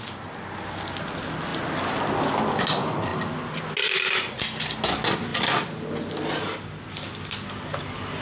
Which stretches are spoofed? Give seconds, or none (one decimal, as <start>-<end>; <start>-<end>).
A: none